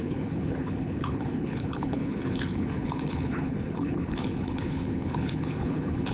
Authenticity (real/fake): fake